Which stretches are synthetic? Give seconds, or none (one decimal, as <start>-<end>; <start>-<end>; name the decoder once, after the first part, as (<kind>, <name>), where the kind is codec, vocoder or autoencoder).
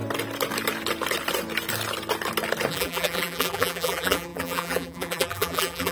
2.7-5.9 (vocoder, BigVGAN v2)